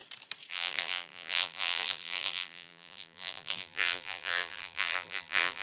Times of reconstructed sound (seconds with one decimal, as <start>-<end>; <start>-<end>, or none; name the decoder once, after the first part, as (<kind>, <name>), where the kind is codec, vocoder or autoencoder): 0.5-5.6 (vocoder, BigVGAN v2)